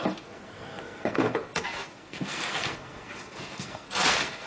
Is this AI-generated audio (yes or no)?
yes